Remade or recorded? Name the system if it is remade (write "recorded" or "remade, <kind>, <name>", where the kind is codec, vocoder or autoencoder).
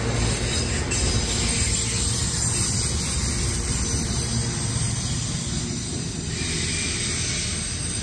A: recorded